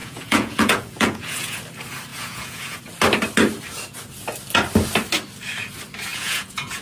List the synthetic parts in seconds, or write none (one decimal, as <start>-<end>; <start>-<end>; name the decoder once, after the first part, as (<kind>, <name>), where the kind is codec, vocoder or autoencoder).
0.0-1.6 (vocoder, Vocos); 2.1-2.8; 6.1-6.8